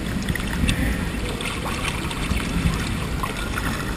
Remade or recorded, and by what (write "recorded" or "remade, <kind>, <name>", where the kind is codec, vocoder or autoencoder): recorded